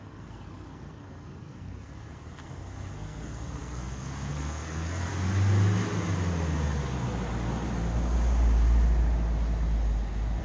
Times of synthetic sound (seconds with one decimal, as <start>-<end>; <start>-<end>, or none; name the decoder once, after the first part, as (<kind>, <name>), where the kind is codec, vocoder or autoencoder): 0.0-5.1 (codec, SNAC)